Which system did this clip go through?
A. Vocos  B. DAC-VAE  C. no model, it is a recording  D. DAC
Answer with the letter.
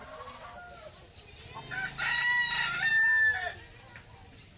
C